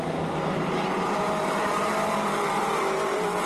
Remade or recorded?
remade